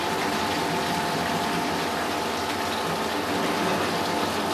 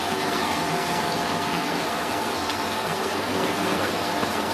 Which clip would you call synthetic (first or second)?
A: second